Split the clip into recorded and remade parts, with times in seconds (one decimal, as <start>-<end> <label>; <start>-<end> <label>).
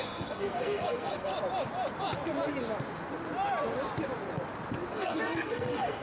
0.0-1.3 remade; 1.3-4.9 recorded; 4.9-6.0 remade